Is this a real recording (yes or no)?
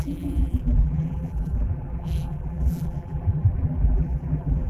no